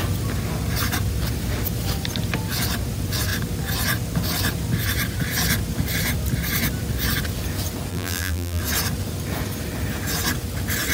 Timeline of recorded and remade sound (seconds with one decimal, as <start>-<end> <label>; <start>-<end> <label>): 0.0-7.9 recorded; 7.9-8.6 remade; 8.6-10.9 recorded